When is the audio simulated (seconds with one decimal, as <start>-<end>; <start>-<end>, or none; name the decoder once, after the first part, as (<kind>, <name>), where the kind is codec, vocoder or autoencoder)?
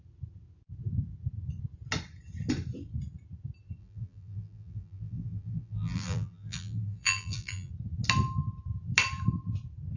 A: 3.8-7.7 (vocoder, BigVGAN v2)